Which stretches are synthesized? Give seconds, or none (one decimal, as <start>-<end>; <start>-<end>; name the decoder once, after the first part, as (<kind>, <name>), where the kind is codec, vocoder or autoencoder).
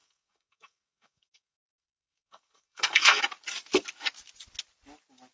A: 0.0-3.2 (codec, SNAC)